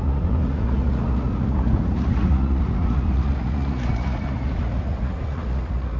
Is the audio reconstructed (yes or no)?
yes